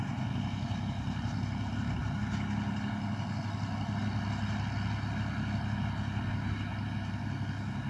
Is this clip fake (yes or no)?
no